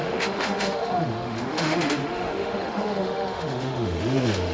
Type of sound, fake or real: fake